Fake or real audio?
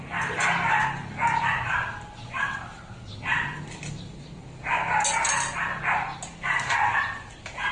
real